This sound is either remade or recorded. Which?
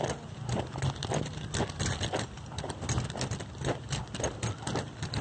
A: recorded